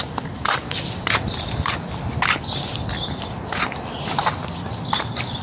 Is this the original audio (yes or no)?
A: yes